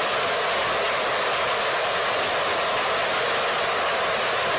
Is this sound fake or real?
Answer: real